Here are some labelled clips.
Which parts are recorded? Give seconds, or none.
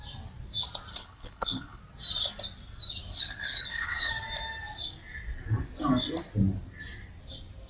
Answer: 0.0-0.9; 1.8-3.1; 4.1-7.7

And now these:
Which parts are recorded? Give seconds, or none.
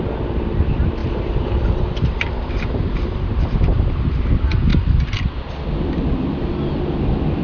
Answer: 0.0-1.0; 4.2-7.4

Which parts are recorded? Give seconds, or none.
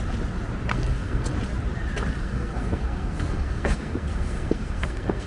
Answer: 0.0-0.7; 1.3-2.2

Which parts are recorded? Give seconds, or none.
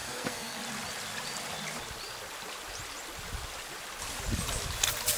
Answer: 0.6-5.2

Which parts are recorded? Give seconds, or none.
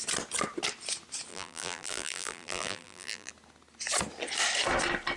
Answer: 0.0-1.3; 3.3-5.2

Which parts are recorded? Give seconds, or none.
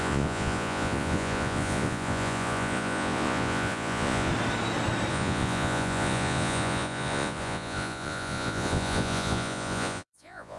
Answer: 4.3-5.1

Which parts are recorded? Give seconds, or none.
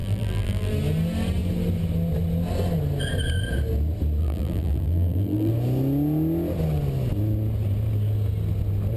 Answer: 0.7-4.2; 5.5-9.0